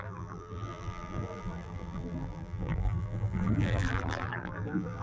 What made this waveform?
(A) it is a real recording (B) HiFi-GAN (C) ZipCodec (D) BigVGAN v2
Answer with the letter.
D